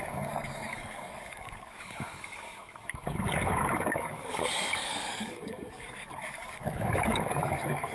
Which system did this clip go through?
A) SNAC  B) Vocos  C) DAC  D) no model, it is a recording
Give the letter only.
C